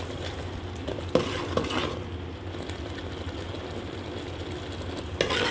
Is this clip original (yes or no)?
yes